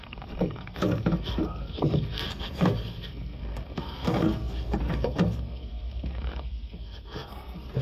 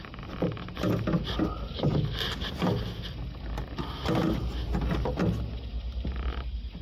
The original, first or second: second